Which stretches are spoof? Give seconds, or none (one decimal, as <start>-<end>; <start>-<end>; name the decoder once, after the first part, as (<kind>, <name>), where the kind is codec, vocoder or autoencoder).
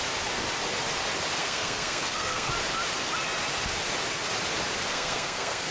1.4-2.5 (codec, SNAC); 4.9-5.7